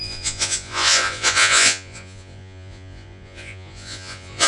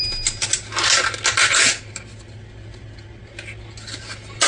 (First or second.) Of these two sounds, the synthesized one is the first